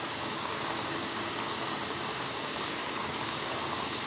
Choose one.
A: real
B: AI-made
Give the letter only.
B